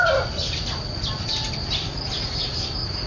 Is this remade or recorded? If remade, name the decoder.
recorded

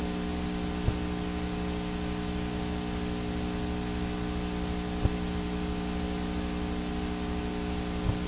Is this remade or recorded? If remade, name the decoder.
recorded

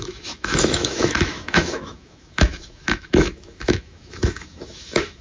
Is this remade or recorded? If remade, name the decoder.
remade, autoencoder, DAC-VAE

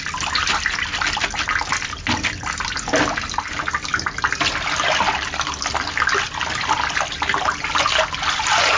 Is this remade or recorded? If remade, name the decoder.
recorded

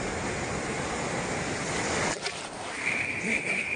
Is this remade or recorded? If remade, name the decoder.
remade, vocoder, BigVGAN v2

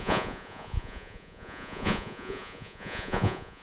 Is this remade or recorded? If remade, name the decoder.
remade, vocoder, Vocos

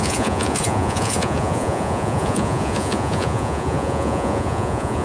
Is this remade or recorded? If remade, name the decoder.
remade, vocoder, Vocos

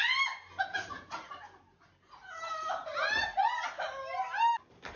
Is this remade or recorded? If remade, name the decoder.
recorded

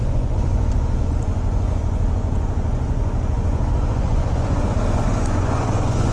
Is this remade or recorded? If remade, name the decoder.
remade, vocoder, Vocos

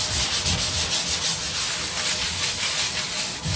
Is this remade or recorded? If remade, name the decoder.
recorded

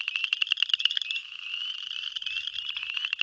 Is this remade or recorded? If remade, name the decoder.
recorded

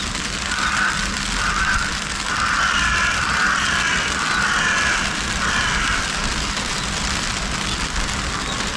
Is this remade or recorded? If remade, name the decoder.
recorded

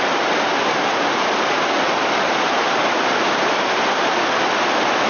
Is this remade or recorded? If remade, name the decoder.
remade, vocoder, BigVGAN v2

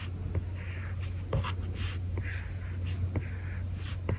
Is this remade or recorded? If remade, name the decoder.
recorded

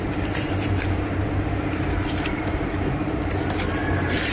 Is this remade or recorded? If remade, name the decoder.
remade, vocoder, BigVGAN v2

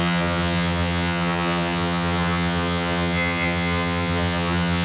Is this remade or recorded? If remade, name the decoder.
remade, vocoder, HiFi-GAN